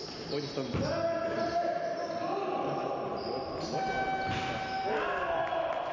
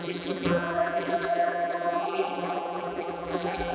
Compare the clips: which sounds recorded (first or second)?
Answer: first